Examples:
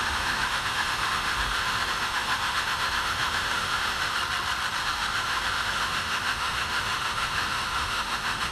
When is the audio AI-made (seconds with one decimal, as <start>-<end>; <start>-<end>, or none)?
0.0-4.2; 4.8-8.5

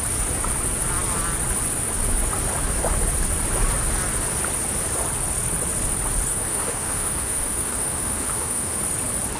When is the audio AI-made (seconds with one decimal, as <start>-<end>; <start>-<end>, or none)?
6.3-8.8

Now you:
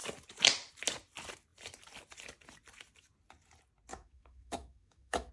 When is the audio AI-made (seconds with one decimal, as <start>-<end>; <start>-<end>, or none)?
3.9-5.3

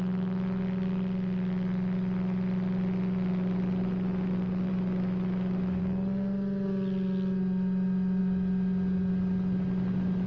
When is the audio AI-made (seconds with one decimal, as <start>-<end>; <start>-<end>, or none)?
4.7-5.8

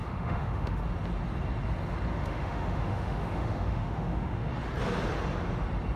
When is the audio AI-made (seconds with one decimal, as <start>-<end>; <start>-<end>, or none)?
0.0-0.8; 2.1-4.5

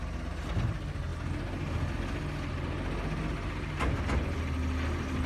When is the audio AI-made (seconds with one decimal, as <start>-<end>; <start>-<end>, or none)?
none